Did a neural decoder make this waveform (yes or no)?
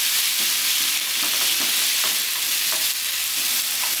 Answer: no